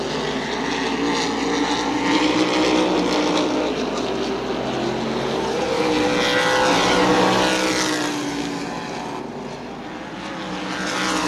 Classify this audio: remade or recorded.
recorded